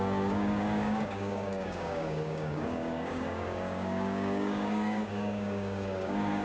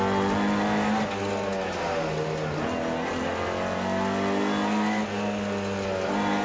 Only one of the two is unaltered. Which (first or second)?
second